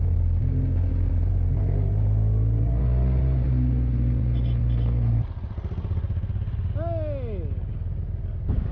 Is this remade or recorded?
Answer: recorded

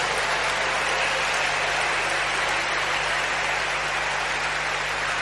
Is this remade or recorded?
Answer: recorded